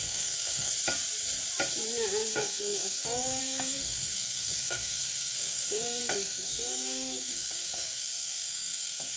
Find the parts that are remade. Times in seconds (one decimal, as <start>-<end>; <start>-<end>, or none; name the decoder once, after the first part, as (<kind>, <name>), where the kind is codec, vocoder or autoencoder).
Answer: 0.0-0.7 (codec, SNAC); 2.3-9.2